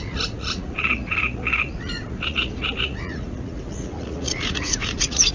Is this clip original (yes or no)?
no